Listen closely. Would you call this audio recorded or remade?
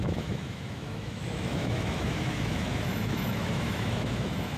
remade